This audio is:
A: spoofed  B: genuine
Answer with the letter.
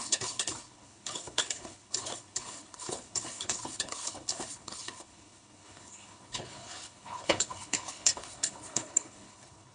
A